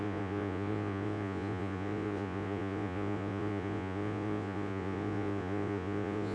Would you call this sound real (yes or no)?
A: no